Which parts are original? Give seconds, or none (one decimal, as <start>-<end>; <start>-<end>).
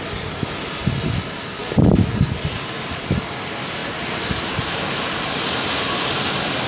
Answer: 0.0-1.6; 2.3-3.8; 5.4-6.7